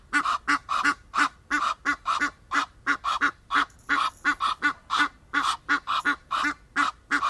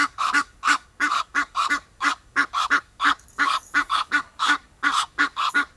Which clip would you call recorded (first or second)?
first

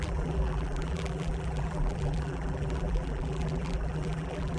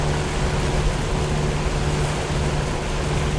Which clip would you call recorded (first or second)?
second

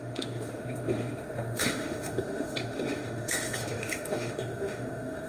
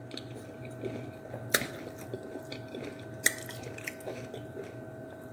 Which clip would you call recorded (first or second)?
second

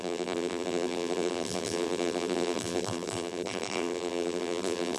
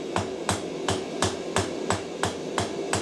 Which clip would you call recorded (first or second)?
second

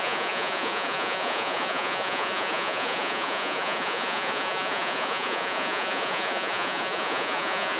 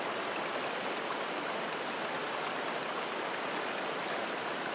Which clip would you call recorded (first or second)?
second